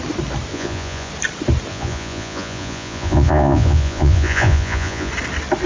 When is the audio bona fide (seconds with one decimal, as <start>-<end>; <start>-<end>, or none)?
0.0-0.5; 1.1-1.7; 5.1-5.7